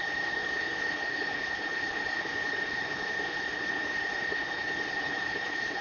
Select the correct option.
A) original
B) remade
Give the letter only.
B